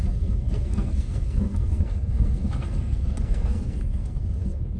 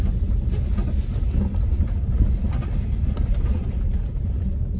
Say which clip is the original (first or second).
second